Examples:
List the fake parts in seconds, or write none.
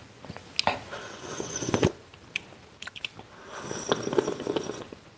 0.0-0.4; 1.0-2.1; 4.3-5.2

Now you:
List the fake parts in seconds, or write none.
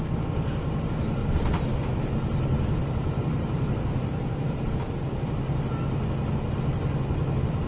1.2-4.7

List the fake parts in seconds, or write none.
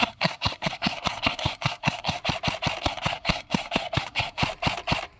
0.0-2.2; 2.8-4.4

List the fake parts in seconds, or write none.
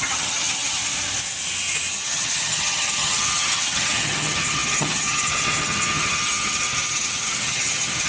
0.0-0.8; 1.9-8.1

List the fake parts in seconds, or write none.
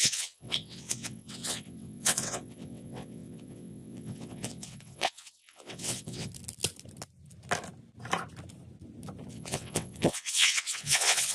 0.0-6.3; 9.3-11.3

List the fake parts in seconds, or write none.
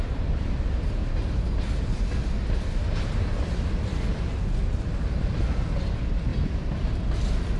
0.0-1.0; 3.4-3.9; 4.8-7.6